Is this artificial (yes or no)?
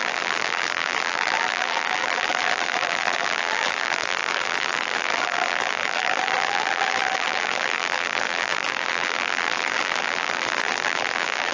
yes